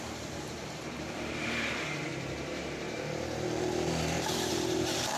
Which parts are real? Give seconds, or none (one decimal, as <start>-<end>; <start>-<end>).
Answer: none